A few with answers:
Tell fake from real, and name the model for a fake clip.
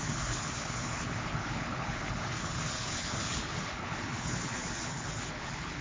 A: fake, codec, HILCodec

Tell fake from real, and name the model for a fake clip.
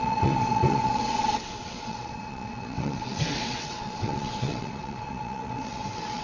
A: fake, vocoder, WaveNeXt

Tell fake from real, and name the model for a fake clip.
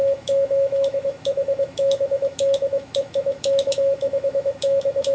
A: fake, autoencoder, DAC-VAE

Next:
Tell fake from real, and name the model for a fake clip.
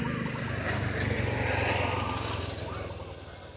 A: real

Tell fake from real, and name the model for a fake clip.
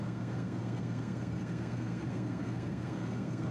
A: fake, codec, SNAC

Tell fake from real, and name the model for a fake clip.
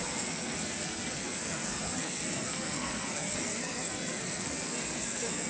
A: fake, codec, SNAC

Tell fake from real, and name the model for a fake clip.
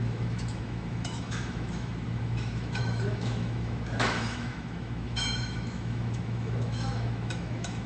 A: fake, autoencoder, DAC-VAE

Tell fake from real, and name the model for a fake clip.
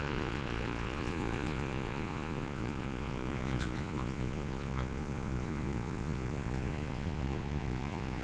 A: fake, vocoder, Vocos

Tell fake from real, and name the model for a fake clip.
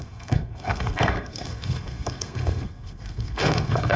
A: fake, codec, SNAC